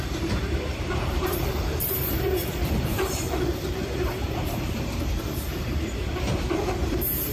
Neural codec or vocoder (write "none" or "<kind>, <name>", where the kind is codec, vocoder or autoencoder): vocoder, BigVGAN v2